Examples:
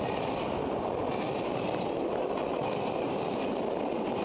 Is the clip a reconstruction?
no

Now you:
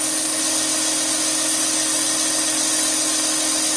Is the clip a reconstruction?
no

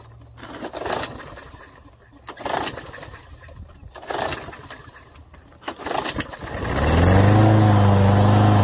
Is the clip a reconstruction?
no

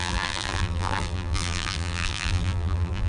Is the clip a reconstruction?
yes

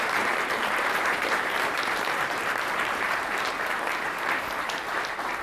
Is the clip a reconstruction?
yes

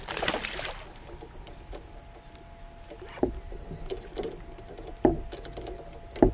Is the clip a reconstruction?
no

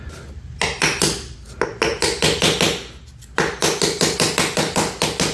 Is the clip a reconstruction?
no